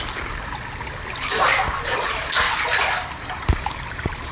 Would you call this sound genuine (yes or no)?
yes